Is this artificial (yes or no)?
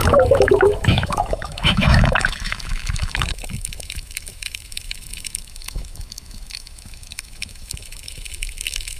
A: yes